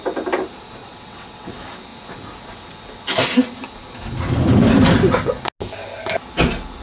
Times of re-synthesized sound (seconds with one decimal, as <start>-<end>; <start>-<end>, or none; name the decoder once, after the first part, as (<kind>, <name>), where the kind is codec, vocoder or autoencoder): 0.8-1.5 (vocoder, WaveNeXt)